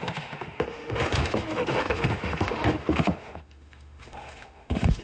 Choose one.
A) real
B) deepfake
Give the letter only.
B